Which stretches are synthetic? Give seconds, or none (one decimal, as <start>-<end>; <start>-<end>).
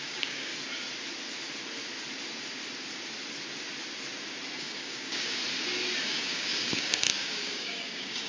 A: 0.0-0.5; 4.6-5.4; 6.0-8.3